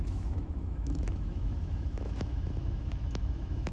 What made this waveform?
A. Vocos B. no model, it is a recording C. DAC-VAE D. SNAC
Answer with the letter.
C